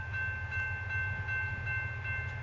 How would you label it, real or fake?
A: real